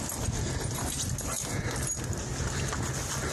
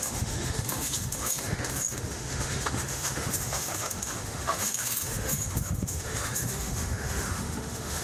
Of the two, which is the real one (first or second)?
first